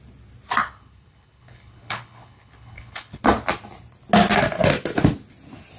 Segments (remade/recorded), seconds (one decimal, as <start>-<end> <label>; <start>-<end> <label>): 0.0-0.6 recorded; 0.6-3.2 remade; 3.2-5.8 recorded